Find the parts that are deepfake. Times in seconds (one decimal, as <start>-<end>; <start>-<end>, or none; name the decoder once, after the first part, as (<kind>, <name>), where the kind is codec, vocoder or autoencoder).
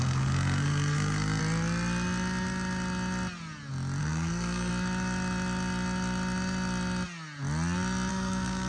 0.0-1.4 (codec, SNAC); 4.0-4.7; 8.1-8.7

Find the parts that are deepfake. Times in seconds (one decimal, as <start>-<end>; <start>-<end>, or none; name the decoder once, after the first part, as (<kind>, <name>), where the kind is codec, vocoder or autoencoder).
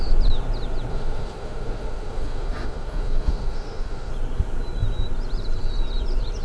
0.9-4.1 (autoencoder, DAC-VAE)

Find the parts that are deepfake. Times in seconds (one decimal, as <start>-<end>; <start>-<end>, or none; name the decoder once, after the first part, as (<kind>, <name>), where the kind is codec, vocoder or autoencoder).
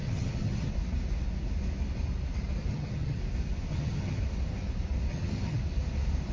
0.0-0.7 (vocoder, HiFi-GAN); 2.7-3.2; 3.7-4.2; 5.1-5.6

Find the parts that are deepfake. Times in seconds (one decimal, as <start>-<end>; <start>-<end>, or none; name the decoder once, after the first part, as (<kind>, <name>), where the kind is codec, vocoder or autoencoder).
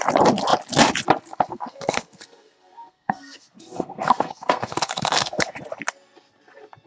1.5-5.5 (codec, SNAC)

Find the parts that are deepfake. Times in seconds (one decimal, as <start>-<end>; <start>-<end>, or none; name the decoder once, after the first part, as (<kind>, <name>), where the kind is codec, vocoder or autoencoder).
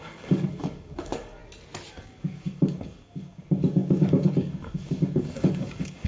0.0-1.4 (codec, DAC); 1.9-6.1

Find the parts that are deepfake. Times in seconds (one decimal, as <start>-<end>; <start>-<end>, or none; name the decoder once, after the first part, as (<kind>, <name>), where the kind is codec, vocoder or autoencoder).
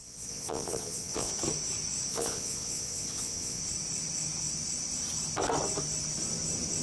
0.0-1.3 (vocoder, Vocos); 2.1-3.6